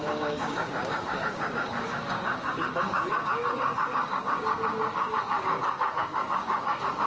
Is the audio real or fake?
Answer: fake